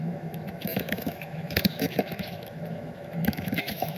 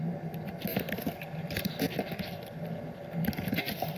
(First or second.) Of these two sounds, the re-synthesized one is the first